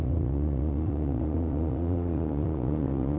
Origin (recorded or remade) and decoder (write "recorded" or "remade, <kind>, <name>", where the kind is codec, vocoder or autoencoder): remade, vocoder, Vocos